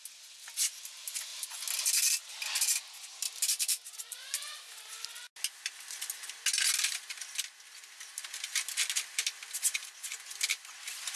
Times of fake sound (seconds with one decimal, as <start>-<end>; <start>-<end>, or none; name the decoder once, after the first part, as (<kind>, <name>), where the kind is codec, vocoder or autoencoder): none